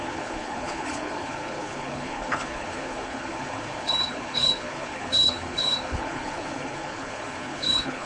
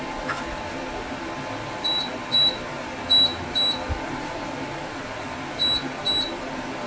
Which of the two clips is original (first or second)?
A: second